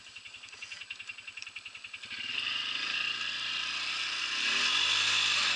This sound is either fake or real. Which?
real